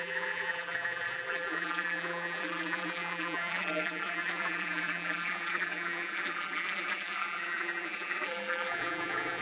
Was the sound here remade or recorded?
remade